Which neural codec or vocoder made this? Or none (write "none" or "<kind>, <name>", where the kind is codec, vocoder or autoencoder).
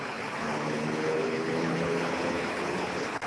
codec, HILCodec